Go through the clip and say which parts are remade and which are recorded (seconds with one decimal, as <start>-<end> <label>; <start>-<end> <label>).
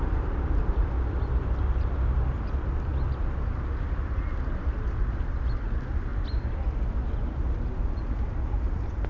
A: 0.0-9.1 recorded